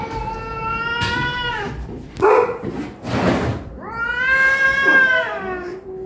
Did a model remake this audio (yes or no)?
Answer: no